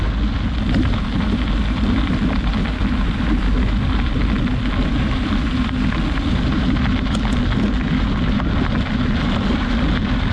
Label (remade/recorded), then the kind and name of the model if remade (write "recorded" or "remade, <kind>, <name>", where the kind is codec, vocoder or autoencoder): recorded